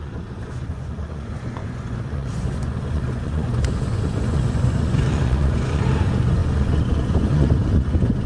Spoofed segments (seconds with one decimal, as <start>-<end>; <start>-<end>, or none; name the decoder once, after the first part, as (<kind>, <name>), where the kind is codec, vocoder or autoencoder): 0.0-8.3 (vocoder, Vocos)